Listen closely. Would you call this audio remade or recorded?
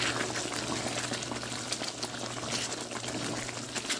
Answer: recorded